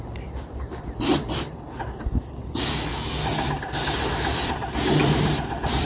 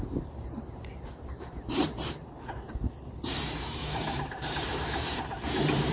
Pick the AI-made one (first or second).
second